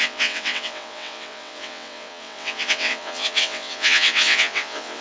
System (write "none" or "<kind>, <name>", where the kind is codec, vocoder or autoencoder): vocoder, WaveNeXt